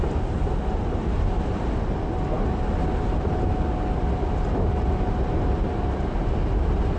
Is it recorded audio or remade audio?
recorded